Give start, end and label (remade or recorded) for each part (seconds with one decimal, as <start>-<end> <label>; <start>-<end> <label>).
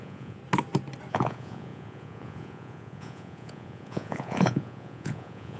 0.0-0.4 remade; 0.4-1.1 recorded; 1.1-5.6 remade